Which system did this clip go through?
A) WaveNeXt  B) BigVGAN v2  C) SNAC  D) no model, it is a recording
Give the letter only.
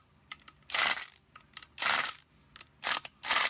D